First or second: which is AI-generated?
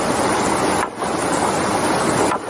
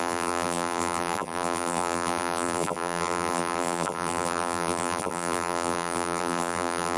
second